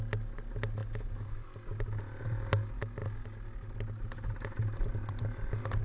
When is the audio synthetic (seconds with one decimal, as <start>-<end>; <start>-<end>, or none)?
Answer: none